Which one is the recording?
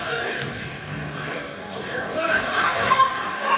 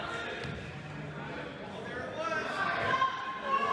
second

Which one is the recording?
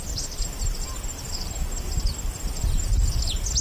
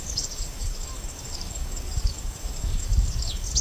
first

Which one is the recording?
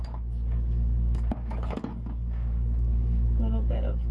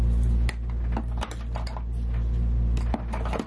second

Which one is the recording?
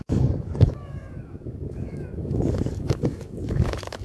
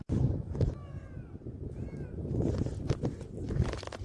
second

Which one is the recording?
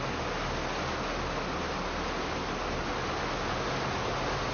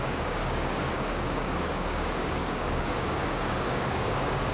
first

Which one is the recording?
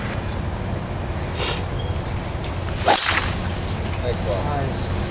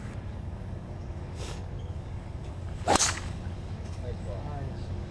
first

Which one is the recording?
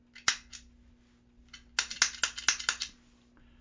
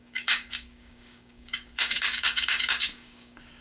first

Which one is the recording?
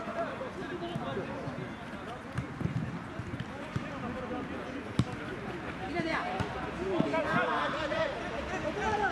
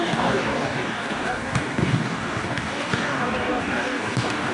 first